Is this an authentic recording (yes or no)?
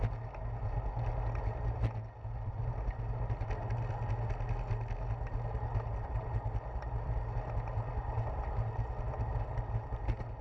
yes